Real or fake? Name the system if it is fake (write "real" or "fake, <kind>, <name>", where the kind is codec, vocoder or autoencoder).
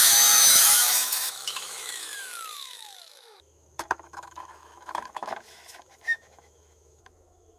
fake, autoencoder, DAC-VAE